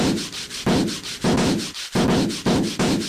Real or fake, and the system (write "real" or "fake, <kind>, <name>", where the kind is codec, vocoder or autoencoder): real